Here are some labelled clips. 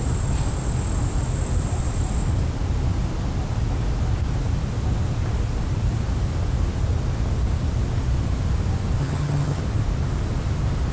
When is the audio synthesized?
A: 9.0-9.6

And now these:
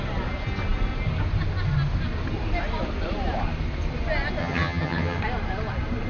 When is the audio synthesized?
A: 4.4-5.2

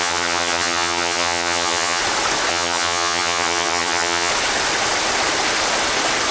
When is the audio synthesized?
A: 0.0-2.0; 2.5-4.3